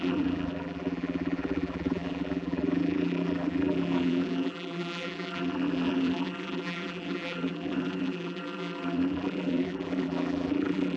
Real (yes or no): no